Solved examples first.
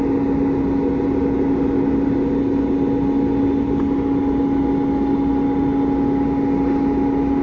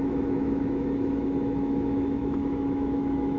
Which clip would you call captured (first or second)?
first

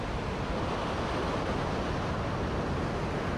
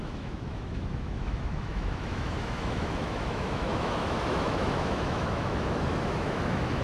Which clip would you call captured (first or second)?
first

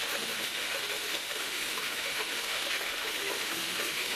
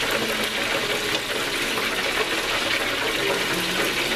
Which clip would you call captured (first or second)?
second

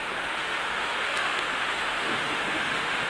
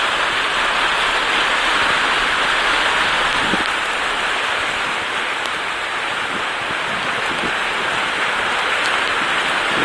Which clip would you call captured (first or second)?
second